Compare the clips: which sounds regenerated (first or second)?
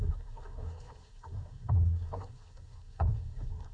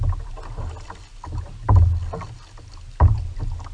first